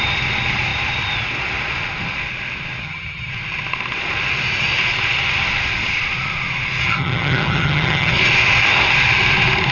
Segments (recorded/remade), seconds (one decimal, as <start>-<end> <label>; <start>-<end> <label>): 0.0-2.8 recorded; 2.8-3.3 remade; 3.3-6.8 recorded; 6.8-8.1 remade; 8.1-9.7 recorded